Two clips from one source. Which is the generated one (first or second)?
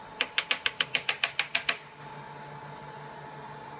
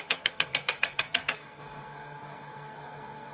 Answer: second